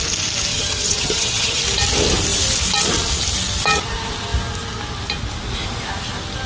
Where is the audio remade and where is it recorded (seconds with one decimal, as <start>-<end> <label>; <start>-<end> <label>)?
0.0-0.5 recorded; 0.5-1.6 remade; 1.6-6.5 recorded